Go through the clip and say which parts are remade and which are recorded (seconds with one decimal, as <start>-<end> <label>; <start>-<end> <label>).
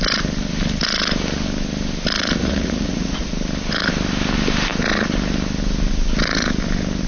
0.0-2.4 recorded; 2.4-3.3 remade; 3.3-7.1 recorded